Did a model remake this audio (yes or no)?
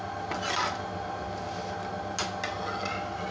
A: no